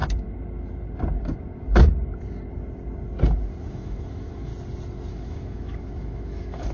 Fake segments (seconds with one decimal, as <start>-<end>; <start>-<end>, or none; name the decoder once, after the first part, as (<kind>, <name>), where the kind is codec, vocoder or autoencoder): 3.7-4.5 (autoencoder, DAC-VAE); 5.1-6.7